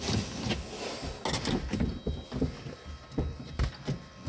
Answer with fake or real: real